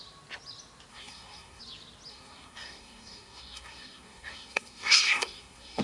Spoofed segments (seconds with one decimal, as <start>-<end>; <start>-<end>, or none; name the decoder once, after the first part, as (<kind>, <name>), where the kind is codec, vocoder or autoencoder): 0.9-1.6 (codec, SNAC); 2.1-5.8